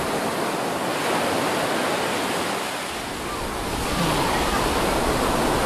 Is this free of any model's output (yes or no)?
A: yes